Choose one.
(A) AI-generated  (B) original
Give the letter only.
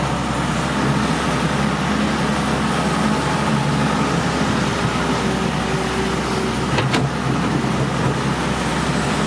B